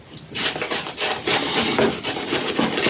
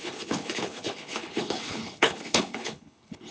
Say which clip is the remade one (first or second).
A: second